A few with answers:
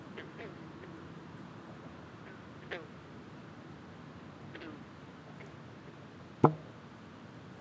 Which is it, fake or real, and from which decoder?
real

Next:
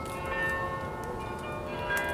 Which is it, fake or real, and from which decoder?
real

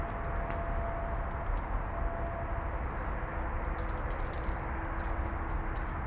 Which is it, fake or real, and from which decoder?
real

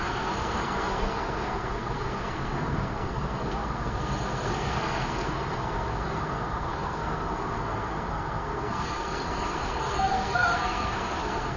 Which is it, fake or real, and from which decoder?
fake, codec, SNAC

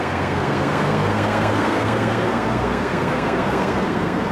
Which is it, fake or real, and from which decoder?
fake, codec, SNAC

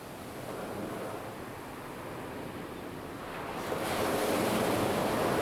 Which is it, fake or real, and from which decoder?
real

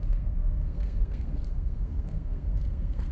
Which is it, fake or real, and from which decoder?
fake, codec, SNAC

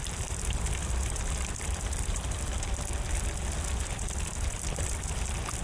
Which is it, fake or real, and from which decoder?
real